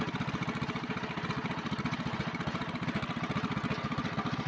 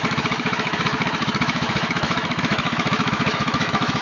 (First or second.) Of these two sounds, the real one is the first